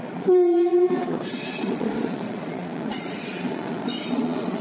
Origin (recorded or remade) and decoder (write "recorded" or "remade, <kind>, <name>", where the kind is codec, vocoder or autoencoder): remade, vocoder, Vocos